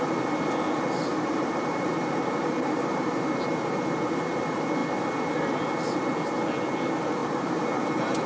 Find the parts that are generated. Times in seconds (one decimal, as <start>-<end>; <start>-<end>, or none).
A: 1.1-3.1; 7.2-8.3